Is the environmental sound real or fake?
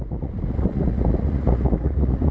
fake